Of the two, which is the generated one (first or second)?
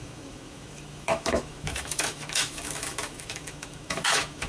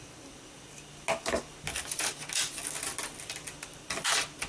first